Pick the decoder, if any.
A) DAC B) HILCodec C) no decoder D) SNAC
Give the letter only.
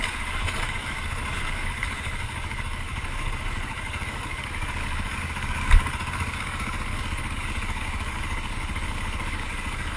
A